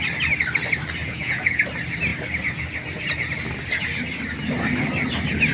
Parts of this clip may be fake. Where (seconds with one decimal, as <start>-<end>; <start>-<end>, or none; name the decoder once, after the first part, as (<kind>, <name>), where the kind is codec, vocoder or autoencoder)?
1.0-1.6 (vocoder, Vocos)